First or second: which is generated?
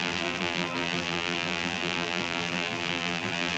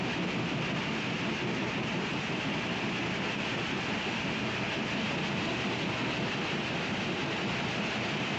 first